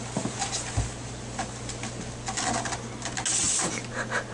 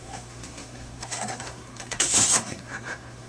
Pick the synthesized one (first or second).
second